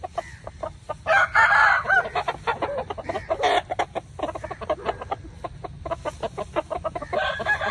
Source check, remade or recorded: recorded